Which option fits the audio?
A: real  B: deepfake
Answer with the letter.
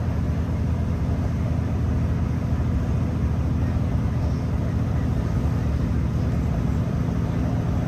A